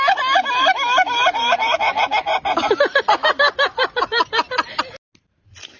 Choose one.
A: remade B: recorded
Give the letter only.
B